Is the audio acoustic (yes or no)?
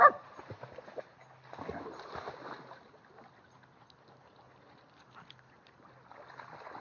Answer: yes